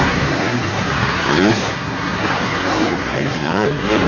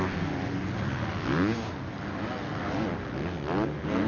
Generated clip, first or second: first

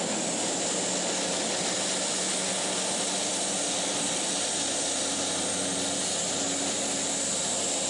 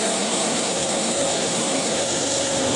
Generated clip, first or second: second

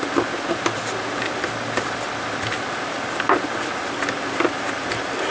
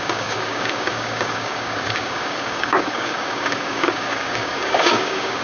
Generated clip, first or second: second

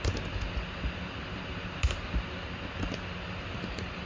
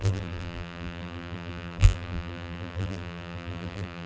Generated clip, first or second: second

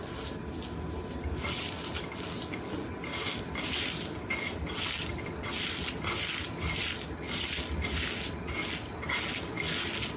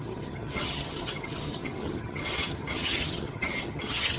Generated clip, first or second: second